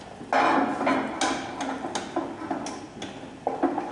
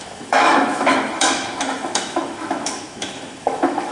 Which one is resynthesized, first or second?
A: second